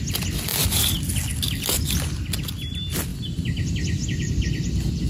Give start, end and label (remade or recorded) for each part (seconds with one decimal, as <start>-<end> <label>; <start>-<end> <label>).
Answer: 0.0-5.1 recorded